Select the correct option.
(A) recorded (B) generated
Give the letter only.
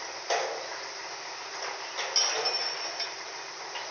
A